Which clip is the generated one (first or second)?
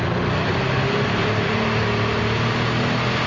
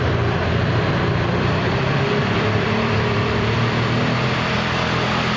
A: second